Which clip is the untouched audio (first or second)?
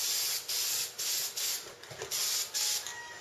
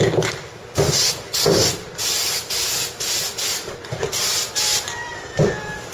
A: first